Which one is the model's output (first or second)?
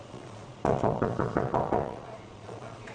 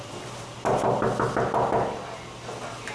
first